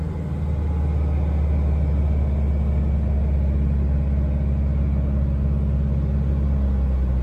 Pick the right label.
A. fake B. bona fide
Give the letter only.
B